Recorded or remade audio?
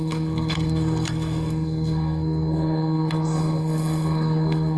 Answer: remade